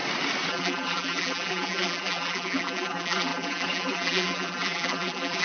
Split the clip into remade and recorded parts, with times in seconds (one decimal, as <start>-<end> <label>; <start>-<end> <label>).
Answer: 0.0-0.5 recorded; 0.5-5.4 remade